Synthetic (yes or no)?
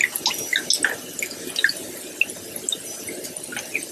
no